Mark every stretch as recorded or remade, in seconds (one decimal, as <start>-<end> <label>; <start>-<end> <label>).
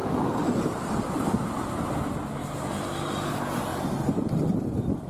0.0-5.1 recorded